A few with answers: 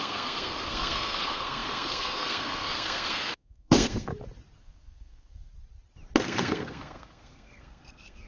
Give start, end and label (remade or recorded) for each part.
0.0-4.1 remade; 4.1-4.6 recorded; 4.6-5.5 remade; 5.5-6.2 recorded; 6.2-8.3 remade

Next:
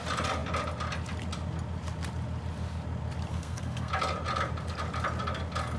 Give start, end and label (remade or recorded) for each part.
0.0-3.3 recorded; 3.3-3.9 remade; 3.9-5.8 recorded

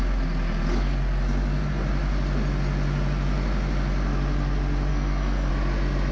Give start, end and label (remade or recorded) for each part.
0.0-4.9 recorded; 4.9-5.5 remade; 5.5-6.1 recorded

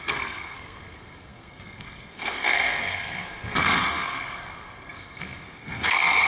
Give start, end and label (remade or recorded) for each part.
0.0-6.3 remade

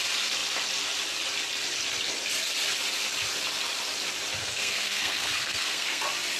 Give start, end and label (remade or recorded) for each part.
0.0-4.4 recorded; 4.4-6.0 remade; 6.0-6.4 recorded

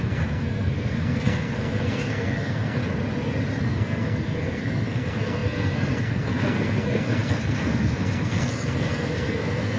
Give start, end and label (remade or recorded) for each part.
0.0-2.8 remade; 2.8-3.6 recorded; 3.6-9.8 remade